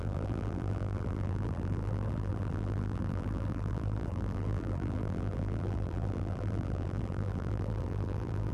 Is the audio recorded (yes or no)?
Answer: no